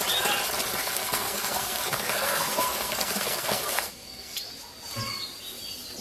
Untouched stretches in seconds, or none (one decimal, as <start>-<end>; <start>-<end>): 0.0-0.8; 4.4-6.0